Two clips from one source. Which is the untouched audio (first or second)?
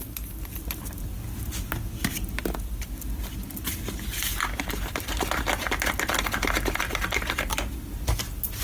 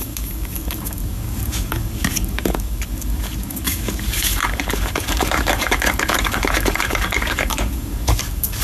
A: first